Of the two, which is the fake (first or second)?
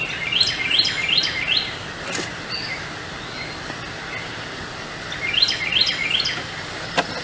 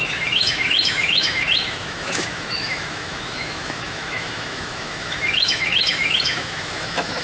second